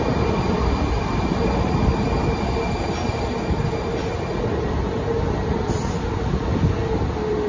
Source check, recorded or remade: recorded